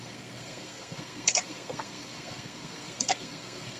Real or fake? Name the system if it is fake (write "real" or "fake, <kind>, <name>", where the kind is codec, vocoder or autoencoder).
fake, codec, SNAC